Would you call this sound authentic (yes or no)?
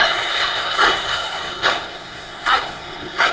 no